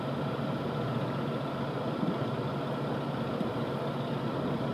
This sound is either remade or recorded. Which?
recorded